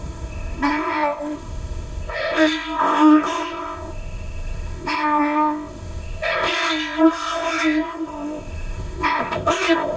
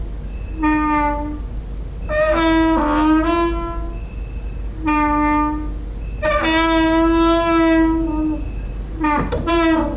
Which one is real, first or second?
second